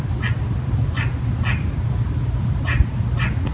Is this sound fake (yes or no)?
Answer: no